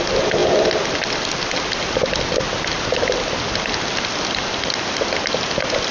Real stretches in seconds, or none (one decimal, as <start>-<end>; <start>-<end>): 0.0-5.9